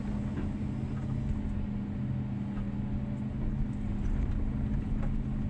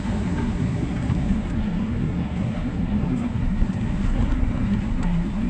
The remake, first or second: second